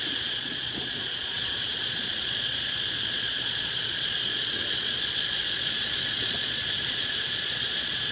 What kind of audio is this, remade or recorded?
remade